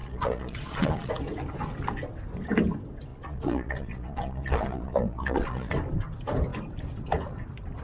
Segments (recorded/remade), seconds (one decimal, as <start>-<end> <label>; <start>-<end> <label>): 0.0-1.1 remade; 1.1-3.1 recorded; 3.1-5.7 remade; 5.7-7.8 recorded